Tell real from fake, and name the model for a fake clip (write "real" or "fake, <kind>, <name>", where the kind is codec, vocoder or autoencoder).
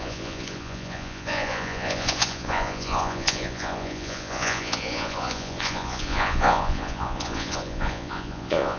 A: fake, vocoder, Vocos